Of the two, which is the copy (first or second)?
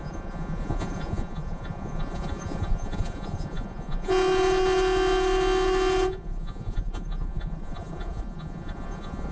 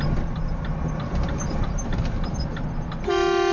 first